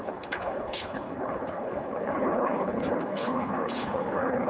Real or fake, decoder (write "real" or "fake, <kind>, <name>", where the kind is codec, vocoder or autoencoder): fake, codec, HILCodec